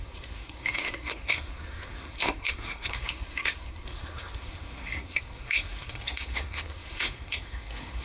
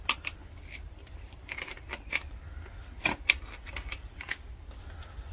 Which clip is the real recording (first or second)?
second